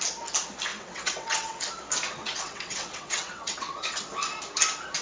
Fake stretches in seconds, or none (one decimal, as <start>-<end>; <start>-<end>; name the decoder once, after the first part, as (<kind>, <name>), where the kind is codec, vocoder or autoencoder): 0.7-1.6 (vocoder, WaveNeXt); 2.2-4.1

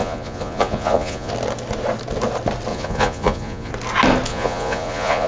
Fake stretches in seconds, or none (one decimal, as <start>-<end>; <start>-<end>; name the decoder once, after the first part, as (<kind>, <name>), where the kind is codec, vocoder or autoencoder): 0.0-1.3 (vocoder, Vocos); 2.7-3.7; 4.3-5.3

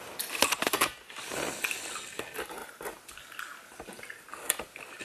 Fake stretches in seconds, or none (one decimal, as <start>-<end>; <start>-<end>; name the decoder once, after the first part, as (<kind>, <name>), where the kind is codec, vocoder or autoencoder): 2.6-3.1 (vocoder, BigVGAN v2)

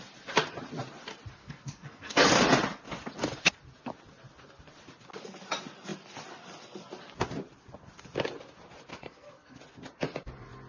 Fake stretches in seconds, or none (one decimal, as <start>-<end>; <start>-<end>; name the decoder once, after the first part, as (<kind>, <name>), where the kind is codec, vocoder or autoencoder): 1.4-2.3 (codec, SNAC); 8.9-9.6

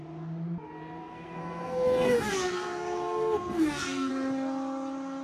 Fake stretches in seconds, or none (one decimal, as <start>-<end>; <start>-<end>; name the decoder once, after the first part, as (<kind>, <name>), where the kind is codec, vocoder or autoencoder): 1.0-4.1 (codec, SNAC)

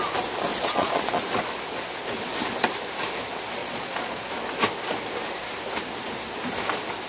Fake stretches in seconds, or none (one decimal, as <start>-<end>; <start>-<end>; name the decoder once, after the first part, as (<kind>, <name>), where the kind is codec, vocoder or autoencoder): 0.5-1.2 (vocoder, Vocos); 3.6-4.3

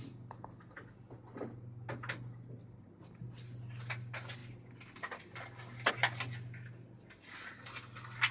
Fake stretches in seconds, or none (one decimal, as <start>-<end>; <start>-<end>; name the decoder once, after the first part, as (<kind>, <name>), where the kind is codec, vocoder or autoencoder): none